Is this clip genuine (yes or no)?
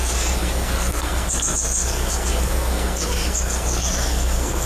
no